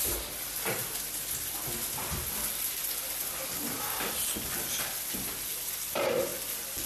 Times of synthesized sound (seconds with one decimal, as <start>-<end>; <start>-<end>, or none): none